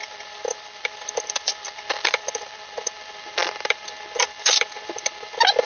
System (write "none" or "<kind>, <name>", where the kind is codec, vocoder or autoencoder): vocoder, BigVGAN v2